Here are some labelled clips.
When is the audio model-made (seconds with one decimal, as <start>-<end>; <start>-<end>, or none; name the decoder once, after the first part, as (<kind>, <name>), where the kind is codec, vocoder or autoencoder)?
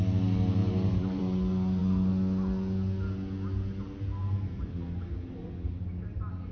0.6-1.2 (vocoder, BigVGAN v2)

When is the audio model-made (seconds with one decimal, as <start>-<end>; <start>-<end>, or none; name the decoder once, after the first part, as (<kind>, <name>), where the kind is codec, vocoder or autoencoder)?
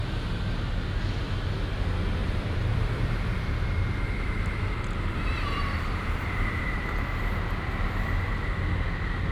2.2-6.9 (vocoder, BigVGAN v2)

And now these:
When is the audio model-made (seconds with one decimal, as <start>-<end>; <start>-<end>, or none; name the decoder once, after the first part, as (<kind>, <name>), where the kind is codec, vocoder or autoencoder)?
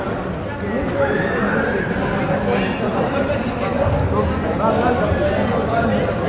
2.9-3.4 (vocoder, BigVGAN v2); 4.2-4.9